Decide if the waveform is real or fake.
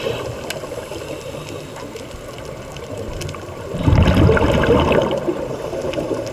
real